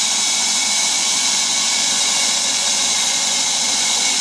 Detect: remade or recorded remade